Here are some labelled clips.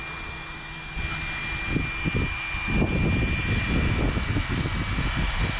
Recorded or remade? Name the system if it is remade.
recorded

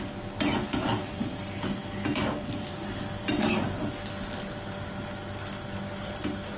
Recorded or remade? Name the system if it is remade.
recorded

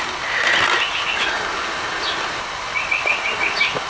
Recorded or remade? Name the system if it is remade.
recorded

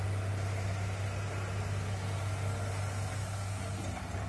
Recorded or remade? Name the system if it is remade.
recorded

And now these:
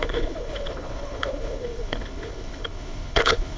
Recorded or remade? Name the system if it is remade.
remade, codec, HILCodec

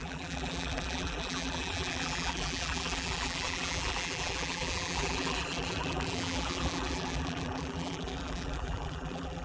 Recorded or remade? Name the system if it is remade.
remade, vocoder, BigVGAN v2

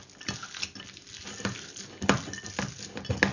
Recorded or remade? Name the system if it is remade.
recorded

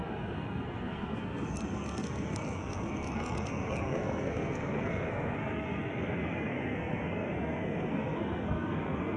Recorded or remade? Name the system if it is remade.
remade, codec, SNAC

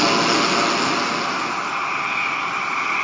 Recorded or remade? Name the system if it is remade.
recorded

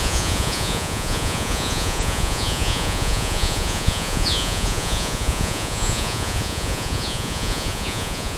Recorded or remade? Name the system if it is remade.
remade, vocoder, Vocos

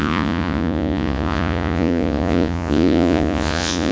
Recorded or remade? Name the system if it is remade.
remade, vocoder, Vocos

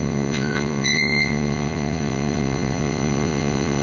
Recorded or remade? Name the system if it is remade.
remade, vocoder, WaveNeXt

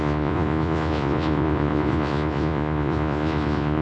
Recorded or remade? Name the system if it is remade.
remade, vocoder, Vocos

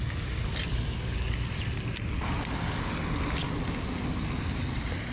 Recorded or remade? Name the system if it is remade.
recorded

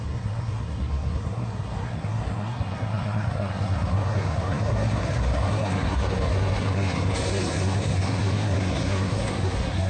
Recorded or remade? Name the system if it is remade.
remade, codec, SNAC